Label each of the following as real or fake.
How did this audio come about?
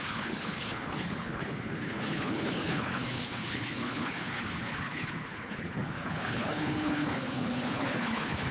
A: fake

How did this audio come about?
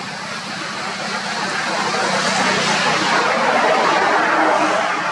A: real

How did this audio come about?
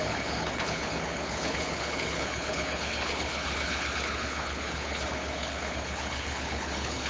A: fake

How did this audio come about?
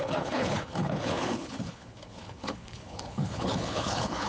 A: fake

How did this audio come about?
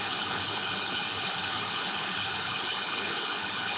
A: fake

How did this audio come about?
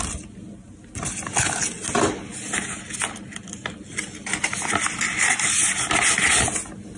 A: real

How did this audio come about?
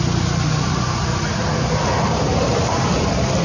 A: real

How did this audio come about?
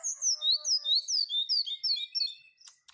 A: real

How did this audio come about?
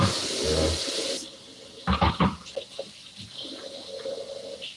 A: real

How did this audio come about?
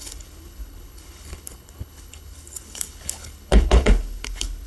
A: fake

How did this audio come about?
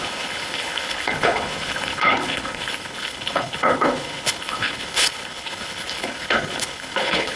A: fake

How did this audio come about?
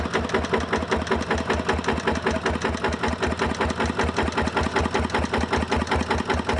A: real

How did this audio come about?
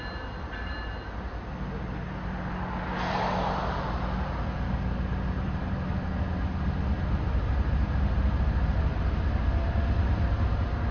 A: real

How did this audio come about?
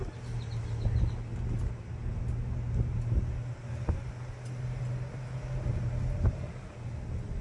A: real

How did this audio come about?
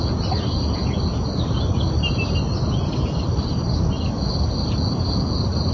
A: real